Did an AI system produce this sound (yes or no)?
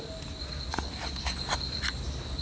no